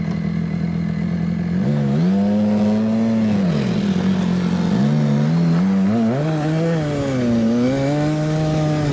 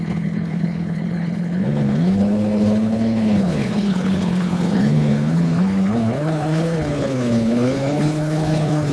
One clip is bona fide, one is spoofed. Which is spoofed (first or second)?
second